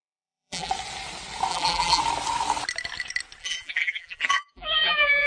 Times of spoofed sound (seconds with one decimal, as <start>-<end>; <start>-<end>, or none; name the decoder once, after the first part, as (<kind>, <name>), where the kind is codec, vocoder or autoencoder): 0.0-0.7 (vocoder, BigVGAN v2); 1.5-2.0; 3.4-5.3

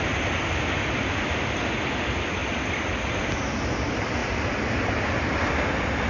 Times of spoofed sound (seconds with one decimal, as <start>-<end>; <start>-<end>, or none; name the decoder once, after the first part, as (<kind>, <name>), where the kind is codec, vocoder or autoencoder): none

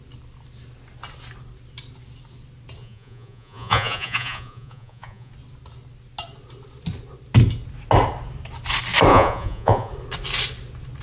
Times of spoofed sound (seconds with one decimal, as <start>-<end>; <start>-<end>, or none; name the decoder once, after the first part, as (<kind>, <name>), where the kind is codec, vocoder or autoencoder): 2.8-5.3 (vocoder, Vocos); 9.1-9.9

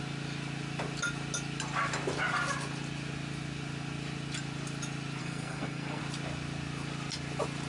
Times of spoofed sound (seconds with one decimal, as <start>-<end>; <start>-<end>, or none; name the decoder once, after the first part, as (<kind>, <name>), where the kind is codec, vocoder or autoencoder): 5.2-6.0 (codec, SNAC)

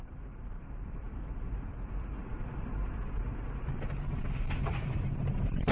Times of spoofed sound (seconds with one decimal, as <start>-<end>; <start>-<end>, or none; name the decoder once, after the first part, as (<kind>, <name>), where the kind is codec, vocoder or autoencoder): 0.0-1.1 (vocoder, BigVGAN v2); 4.5-5.7

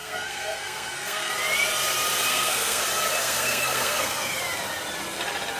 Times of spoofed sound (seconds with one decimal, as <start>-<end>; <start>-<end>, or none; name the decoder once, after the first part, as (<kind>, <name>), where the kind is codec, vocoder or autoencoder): 0.0-1.3 (codec, SNAC); 2.3-2.8; 3.2-4.4

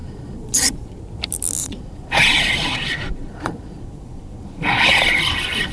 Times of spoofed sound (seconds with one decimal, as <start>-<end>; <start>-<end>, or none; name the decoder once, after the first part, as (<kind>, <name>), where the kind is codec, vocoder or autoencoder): 0.0-1.0 (vocoder, Vocos); 1.6-5.0

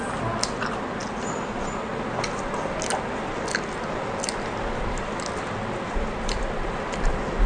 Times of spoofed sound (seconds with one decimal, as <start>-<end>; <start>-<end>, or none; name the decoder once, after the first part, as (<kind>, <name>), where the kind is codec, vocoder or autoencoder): none